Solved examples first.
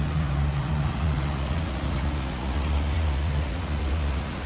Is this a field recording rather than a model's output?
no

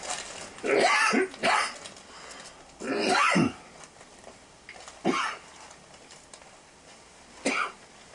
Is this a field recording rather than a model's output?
yes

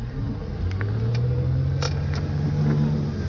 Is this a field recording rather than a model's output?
yes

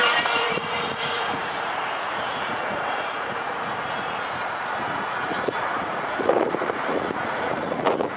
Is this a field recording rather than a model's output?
no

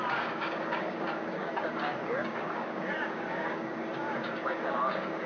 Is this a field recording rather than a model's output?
no